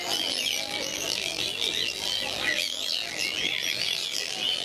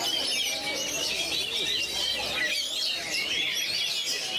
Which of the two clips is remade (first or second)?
first